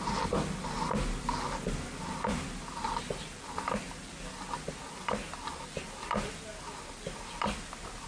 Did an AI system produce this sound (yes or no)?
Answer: no